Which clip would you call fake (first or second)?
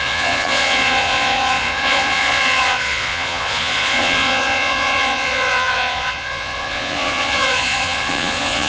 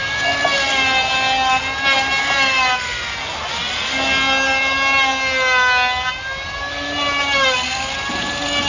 first